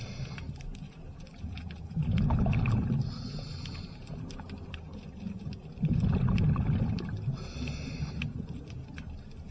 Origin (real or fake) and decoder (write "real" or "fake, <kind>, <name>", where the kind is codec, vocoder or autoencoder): real